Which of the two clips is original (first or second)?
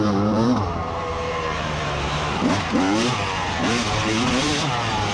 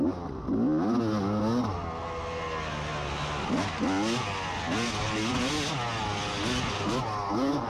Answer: second